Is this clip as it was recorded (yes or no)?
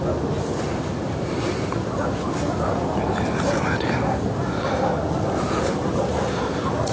yes